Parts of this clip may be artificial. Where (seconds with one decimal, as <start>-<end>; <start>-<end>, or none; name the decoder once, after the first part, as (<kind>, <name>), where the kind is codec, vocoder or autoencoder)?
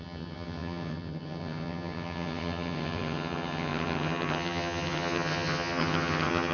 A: 0.0-6.5 (vocoder, HiFi-GAN)